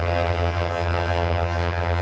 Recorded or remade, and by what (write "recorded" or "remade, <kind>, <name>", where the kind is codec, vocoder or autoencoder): remade, vocoder, HiFi-GAN